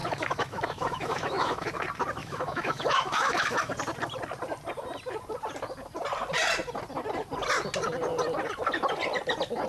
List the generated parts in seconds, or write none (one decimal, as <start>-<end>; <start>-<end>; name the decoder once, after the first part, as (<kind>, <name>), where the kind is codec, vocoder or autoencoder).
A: 0.0-1.8 (autoencoder, DAC-VAE); 2.2-3.7